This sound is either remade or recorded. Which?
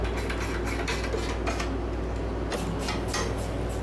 recorded